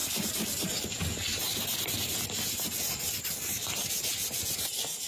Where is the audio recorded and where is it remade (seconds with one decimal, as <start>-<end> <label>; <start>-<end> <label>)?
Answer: 0.0-5.1 recorded